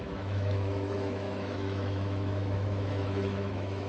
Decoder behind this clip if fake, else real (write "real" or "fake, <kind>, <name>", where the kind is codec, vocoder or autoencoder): fake, autoencoder, DAC-VAE